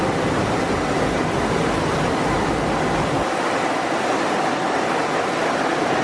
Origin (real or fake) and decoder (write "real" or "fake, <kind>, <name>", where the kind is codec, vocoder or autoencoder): real